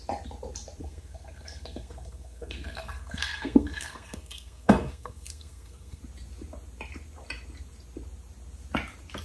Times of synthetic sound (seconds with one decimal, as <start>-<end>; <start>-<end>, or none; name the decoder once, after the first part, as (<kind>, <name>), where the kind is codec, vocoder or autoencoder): 0.8-6.0 (codec, SNAC)